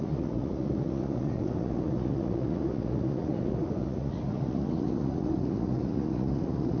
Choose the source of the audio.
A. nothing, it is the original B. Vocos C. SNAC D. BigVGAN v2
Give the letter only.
B